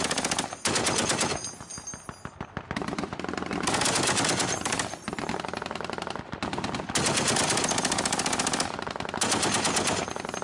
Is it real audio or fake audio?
real